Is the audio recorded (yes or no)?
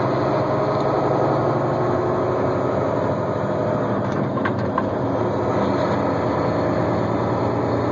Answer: yes